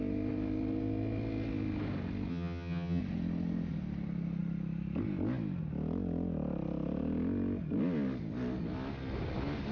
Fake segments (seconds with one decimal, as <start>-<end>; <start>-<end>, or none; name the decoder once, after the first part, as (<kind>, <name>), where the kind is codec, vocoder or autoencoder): 2.3-3.0 (vocoder, HiFi-GAN)